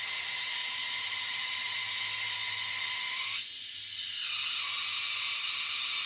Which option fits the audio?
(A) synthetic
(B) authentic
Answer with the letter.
B